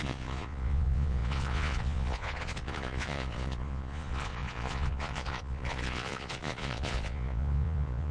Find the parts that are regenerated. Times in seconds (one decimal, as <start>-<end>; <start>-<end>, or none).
0.0-8.1